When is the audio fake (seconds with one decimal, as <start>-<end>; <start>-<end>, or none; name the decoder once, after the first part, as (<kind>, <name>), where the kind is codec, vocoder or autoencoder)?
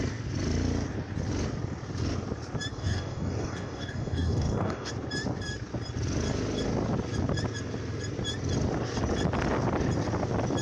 2.7-4.9 (codec, DAC)